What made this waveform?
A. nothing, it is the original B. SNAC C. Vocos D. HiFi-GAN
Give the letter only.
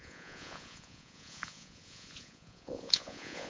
C